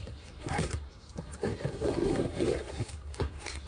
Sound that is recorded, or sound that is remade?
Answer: remade